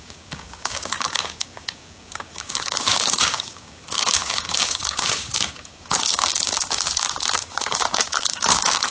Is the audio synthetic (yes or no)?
yes